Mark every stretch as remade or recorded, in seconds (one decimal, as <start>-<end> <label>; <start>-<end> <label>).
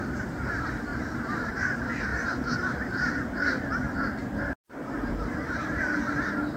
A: 0.0-0.9 recorded; 0.9-1.5 remade; 1.5-4.6 recorded; 4.6-5.8 remade; 5.8-6.6 recorded